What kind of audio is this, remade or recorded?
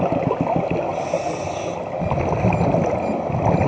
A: recorded